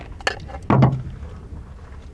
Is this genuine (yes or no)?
yes